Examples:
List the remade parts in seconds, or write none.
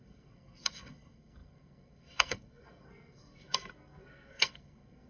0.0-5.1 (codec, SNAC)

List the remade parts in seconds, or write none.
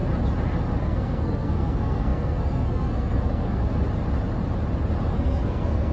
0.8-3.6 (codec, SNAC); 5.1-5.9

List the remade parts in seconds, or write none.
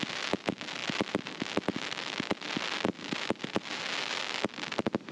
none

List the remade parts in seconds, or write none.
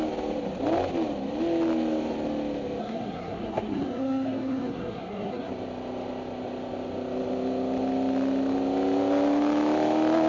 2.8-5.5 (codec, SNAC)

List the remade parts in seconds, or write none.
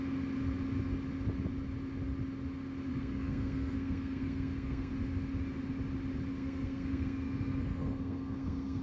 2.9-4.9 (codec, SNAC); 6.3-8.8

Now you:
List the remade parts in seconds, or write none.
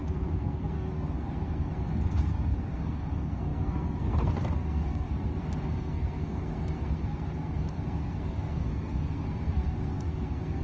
0.0-10.6 (codec, SNAC)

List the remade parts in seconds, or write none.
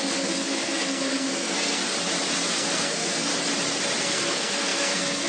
0.0-1.8 (codec, SNAC); 2.5-3.3; 4.0-5.3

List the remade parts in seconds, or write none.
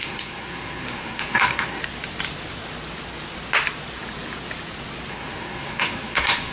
0.0-1.8 (codec, SNAC); 5.1-6.5